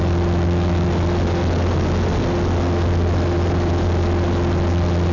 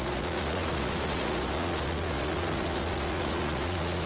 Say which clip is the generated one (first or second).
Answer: second